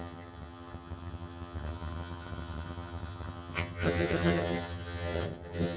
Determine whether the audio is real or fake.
fake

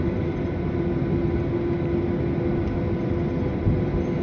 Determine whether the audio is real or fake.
real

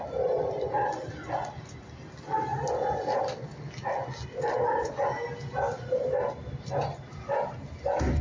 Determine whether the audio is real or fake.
real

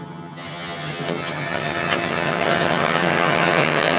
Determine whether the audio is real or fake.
fake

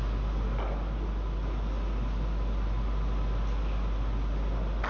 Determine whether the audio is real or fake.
real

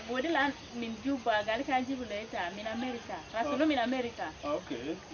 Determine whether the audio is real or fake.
real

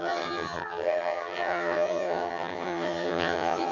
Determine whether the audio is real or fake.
fake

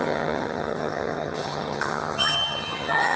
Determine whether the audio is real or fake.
fake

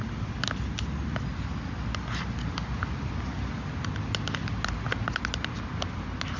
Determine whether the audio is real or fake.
real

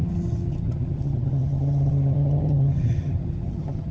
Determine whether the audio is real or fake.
fake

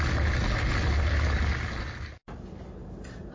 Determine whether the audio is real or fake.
real